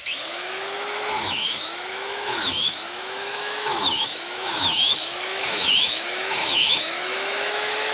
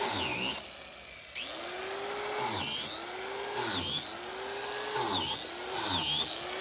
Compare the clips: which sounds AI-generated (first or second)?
first